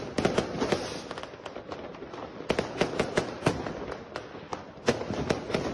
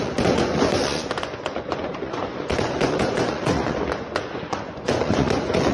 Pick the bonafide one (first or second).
first